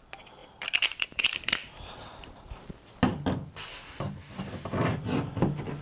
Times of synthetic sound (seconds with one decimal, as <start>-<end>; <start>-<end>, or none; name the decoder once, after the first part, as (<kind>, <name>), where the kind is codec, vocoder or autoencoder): 0.4-2.6 (vocoder, BigVGAN v2)